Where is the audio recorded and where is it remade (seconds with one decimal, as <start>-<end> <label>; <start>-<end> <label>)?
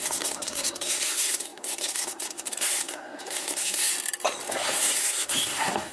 0.0-3.9 remade; 3.9-4.5 recorded; 4.5-5.9 remade